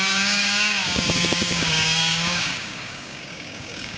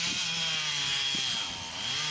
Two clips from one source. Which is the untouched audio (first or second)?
second